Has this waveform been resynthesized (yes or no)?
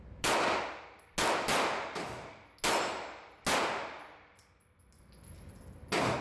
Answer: no